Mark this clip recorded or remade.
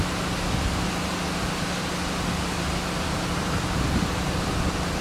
recorded